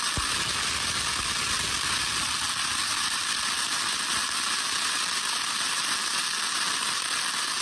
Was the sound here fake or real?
real